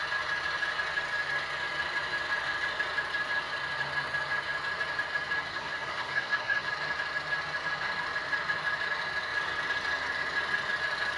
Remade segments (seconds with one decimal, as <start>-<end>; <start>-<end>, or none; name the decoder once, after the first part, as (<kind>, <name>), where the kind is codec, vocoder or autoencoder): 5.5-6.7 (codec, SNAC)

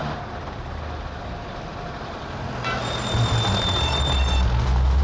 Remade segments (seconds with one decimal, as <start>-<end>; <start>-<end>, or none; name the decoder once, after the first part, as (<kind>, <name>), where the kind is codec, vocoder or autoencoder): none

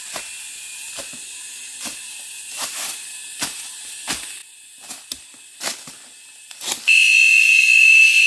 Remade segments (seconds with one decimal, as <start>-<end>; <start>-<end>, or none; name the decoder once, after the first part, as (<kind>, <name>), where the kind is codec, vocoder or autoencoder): none

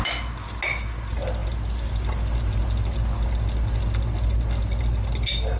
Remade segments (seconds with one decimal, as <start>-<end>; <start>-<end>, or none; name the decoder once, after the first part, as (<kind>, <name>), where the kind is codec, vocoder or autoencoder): none

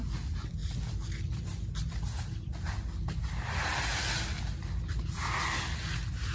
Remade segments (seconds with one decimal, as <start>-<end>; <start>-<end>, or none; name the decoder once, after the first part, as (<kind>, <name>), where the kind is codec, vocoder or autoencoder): none